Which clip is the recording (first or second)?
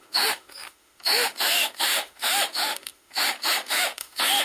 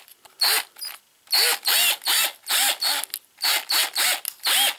second